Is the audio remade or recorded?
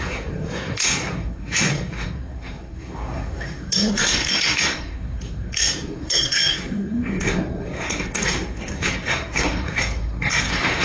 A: remade